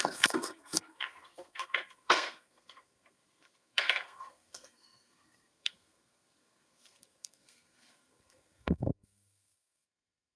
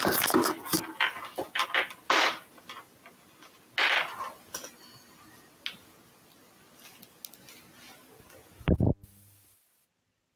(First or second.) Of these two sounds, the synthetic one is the first